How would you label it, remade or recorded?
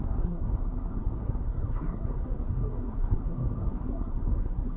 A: remade